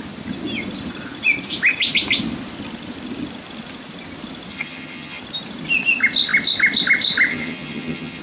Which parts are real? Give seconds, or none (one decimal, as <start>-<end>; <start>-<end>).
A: 0.0-4.5; 5.2-7.3